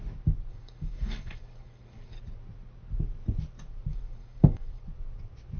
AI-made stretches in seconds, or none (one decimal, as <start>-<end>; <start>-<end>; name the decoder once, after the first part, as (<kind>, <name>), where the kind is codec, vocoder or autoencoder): 0.5-2.2 (codec, DAC); 3.9-4.8